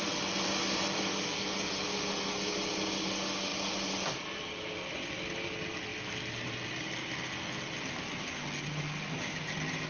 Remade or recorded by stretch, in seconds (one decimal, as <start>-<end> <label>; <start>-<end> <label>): 0.0-9.9 recorded